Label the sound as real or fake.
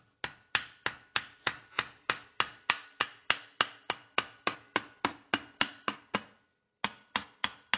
real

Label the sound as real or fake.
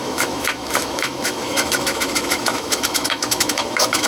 fake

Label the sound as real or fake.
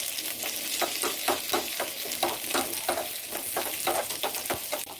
real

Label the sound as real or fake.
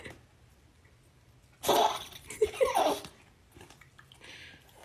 real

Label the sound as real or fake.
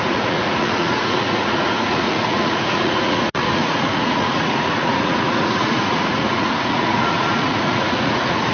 fake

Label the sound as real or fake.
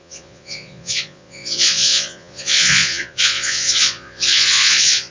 fake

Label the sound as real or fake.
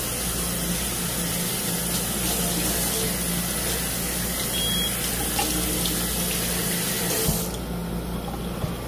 real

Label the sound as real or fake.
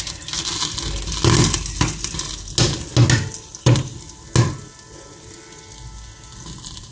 real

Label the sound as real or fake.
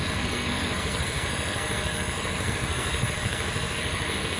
fake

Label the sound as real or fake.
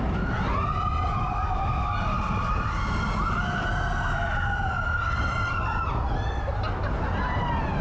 real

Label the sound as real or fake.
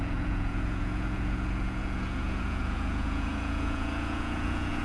fake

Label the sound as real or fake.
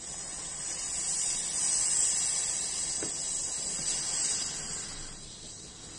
real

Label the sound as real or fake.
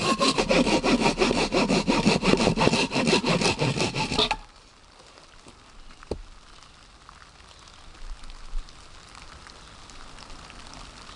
real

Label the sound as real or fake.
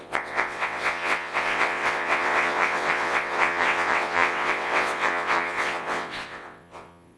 fake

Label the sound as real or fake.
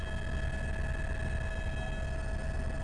real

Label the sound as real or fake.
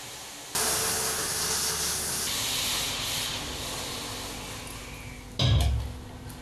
real